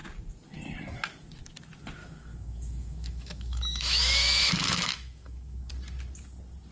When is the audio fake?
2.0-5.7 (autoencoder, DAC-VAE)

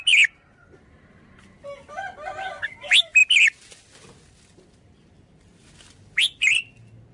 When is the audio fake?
none